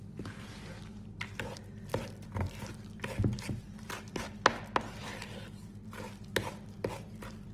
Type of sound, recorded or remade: recorded